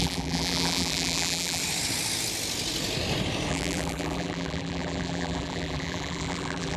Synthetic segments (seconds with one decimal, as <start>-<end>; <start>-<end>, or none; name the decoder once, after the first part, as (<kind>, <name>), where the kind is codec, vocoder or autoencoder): 0.0-1.6 (vocoder, BigVGAN v2); 3.5-6.8